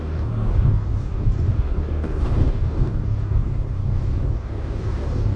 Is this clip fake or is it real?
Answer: fake